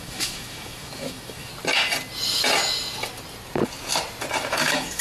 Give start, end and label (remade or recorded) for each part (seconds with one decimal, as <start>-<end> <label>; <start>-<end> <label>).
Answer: 0.0-1.5 remade; 1.5-4.5 recorded; 4.5-5.0 remade